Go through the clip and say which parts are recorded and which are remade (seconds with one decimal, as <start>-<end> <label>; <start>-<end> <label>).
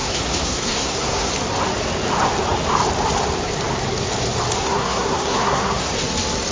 0.0-1.3 remade; 1.3-4.6 recorded; 4.6-5.9 remade; 5.9-6.5 recorded